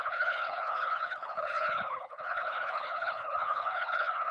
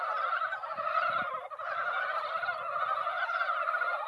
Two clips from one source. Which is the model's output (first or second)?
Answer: first